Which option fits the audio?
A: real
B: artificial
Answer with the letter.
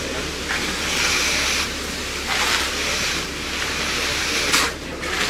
A